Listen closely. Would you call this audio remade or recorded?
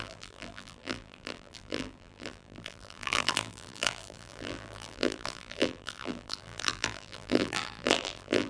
remade